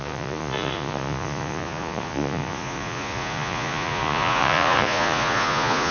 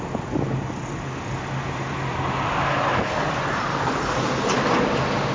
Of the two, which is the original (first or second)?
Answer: second